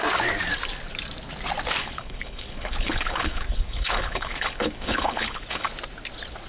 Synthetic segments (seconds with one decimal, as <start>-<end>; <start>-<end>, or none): 1.8-5.7

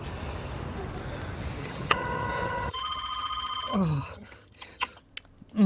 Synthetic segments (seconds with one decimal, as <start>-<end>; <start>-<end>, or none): 1.6-5.0

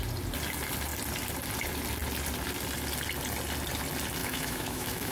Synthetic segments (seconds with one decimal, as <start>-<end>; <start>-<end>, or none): 4.2-5.1

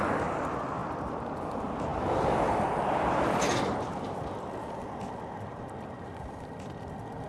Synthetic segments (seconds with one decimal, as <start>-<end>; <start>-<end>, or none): none

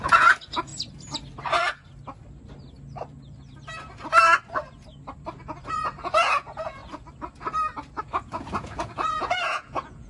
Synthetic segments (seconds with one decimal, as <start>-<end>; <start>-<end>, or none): 0.0-0.7; 5.7-6.8; 8.0-10.1

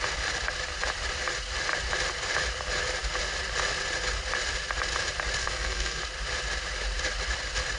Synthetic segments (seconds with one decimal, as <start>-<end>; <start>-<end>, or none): 5.4-6.0